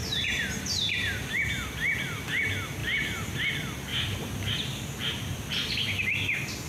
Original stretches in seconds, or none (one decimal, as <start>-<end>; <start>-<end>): 1.4-2.8; 3.5-3.9; 4.5-6.7